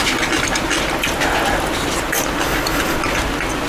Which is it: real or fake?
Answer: real